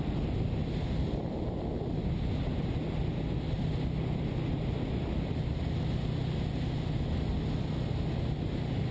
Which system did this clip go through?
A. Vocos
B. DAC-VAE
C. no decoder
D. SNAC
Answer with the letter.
C